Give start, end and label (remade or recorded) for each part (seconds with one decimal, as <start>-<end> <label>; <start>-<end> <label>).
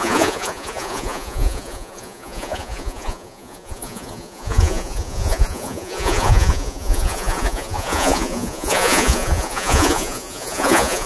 0.0-11.1 remade